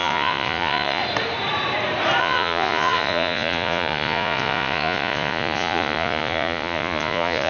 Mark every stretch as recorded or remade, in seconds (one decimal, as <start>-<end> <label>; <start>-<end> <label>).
0.0-1.0 remade; 1.0-2.2 recorded; 2.2-7.5 remade